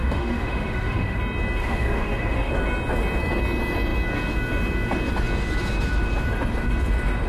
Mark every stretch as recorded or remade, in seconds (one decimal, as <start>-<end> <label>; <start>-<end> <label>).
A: 0.0-1.2 remade; 1.2-1.6 recorded; 1.6-2.5 remade; 2.5-7.3 recorded